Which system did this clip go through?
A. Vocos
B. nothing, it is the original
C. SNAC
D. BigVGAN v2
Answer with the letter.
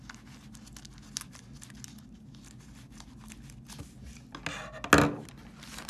B